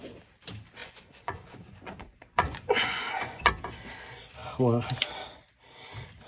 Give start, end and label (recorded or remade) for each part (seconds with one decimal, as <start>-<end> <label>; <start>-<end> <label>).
0.0-0.8 recorded; 0.8-3.5 remade; 3.5-6.3 recorded